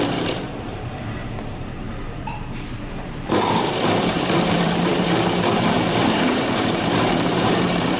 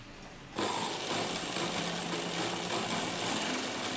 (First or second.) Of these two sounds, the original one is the second